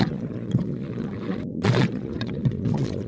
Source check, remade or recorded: remade